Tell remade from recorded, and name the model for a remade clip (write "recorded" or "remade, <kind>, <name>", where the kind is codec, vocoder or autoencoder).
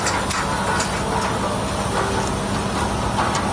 recorded